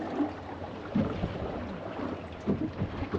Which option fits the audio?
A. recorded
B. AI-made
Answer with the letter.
B